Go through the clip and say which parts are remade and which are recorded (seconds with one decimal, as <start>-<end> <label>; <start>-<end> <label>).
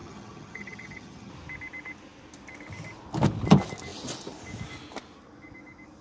0.0-1.3 remade; 1.3-6.0 recorded